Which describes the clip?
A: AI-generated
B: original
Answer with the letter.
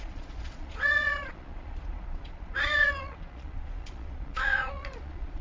A